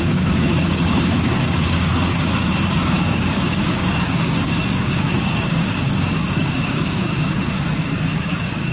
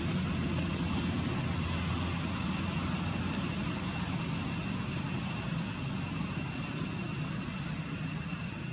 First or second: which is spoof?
first